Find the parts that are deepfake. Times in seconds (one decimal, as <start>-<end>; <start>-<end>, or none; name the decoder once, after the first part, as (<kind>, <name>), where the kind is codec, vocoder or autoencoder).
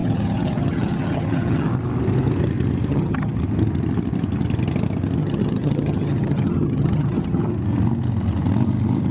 0.0-1.7 (vocoder, HiFi-GAN); 2.9-3.4; 5.2-7.5